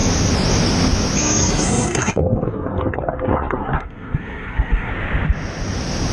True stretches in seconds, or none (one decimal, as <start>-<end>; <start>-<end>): 0.0-1.2; 4.9-6.1